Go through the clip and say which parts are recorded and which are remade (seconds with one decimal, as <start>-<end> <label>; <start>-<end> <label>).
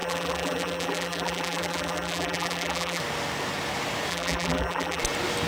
0.0-3.0 remade; 3.0-4.1 recorded; 4.1-5.0 remade; 5.0-5.5 recorded